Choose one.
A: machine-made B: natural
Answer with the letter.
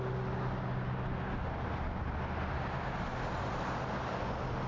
B